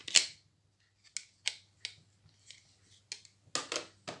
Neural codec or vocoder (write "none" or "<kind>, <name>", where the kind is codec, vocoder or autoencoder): none